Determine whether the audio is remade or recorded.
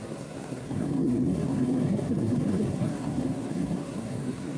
remade